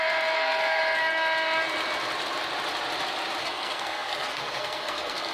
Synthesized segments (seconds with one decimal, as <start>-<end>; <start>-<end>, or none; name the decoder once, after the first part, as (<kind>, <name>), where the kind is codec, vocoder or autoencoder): 0.0-0.8 (codec, SNAC); 3.4-5.3